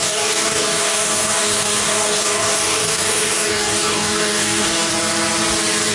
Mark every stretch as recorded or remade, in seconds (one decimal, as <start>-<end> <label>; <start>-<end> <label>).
0.0-4.9 remade; 4.9-5.9 recorded